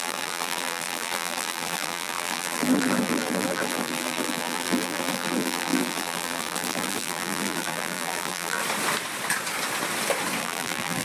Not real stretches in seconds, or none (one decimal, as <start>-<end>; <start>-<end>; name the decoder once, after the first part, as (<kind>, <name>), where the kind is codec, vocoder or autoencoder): 0.0-8.6 (vocoder, BigVGAN v2); 10.4-11.0